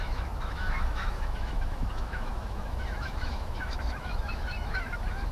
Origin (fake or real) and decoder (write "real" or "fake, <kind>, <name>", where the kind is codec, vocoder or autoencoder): fake, autoencoder, DAC-VAE